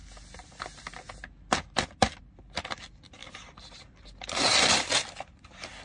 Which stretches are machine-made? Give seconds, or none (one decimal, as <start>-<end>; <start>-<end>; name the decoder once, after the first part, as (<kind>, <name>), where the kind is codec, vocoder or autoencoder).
none